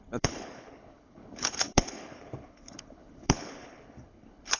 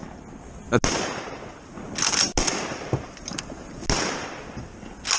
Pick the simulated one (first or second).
first